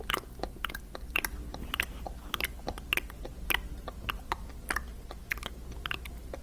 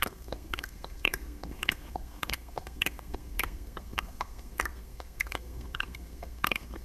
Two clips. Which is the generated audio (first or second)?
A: second